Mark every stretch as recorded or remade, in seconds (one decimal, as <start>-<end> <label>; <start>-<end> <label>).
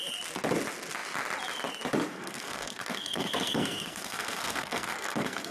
0.0-2.1 recorded; 2.1-5.5 remade